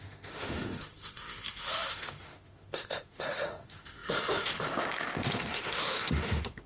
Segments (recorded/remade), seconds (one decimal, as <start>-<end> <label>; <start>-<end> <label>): 0.0-6.7 remade